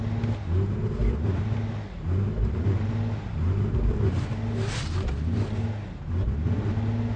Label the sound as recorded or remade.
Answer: recorded